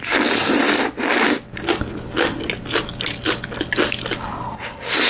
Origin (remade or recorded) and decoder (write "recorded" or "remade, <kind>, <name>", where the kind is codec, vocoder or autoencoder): recorded